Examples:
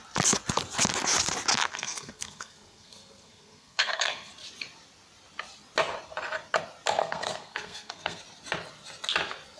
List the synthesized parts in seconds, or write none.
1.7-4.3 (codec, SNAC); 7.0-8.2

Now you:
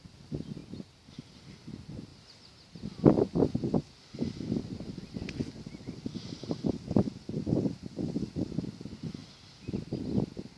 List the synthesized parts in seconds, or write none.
none

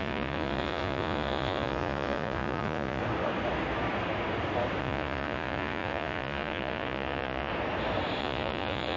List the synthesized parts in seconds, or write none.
0.0-3.0 (vocoder, Vocos); 4.8-7.5; 8.2-9.0

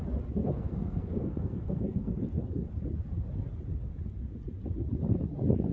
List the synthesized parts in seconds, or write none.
0.4-2.7 (codec, SNAC)

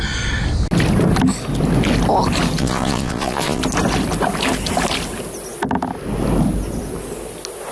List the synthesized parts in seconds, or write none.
2.6-3.6 (vocoder, Vocos)

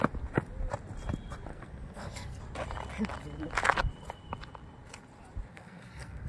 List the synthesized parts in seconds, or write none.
1.5-2.4 (codec, SNAC); 5.5-6.3